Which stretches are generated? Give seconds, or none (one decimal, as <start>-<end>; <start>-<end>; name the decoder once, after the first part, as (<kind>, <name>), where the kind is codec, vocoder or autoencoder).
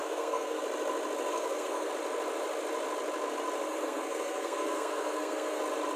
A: 0.0-0.6 (codec, SNAC); 1.3-1.9; 3.7-5.6